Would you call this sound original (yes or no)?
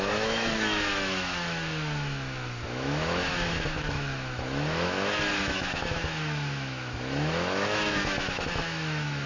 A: no